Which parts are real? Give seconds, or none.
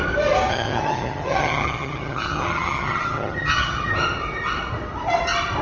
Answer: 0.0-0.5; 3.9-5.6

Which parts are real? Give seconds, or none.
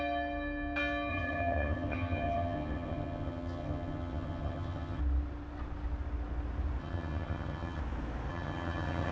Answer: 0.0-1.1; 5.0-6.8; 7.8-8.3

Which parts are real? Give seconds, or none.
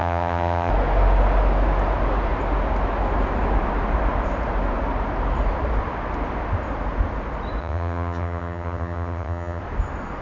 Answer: 0.7-7.6; 9.6-10.2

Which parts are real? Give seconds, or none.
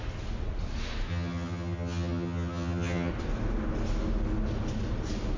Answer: 0.0-1.1; 3.1-5.4